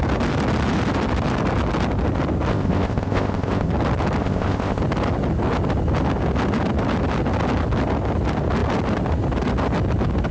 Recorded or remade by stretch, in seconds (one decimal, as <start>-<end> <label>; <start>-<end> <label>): 0.0-2.5 recorded; 2.5-3.7 remade; 3.7-4.2 recorded; 4.2-4.8 remade; 4.8-10.3 recorded